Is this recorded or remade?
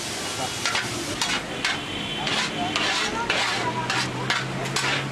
recorded